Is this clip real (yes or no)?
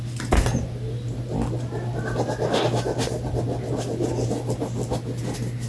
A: yes